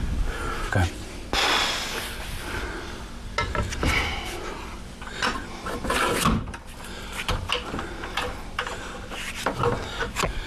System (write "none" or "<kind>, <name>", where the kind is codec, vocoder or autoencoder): none